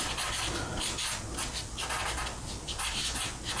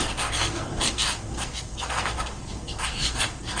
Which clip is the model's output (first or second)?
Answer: second